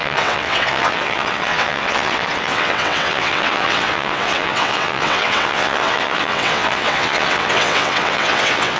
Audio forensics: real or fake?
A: fake